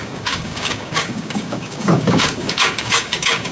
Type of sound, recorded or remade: remade